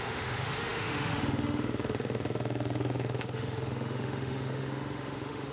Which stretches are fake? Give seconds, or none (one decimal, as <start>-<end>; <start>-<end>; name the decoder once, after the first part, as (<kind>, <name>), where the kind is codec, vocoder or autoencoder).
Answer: 0.0-5.5 (autoencoder, DAC-VAE)